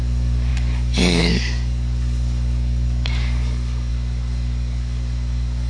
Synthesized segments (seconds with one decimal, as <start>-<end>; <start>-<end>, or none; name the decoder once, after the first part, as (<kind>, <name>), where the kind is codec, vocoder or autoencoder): 0.0-5.7 (codec, DAC)

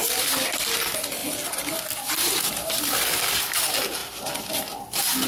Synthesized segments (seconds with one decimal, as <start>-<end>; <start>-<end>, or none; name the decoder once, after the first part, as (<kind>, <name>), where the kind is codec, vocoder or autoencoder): none